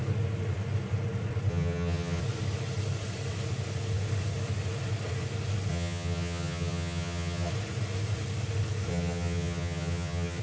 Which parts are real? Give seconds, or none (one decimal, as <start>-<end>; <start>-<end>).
0.0-1.5; 2.2-5.7; 7.5-8.9